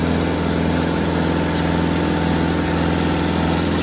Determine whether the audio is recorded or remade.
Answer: recorded